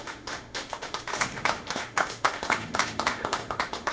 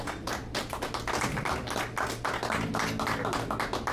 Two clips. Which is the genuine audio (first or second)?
second